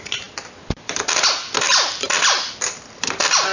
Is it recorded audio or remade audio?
recorded